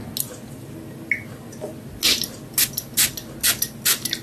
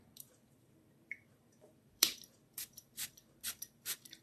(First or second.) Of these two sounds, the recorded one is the first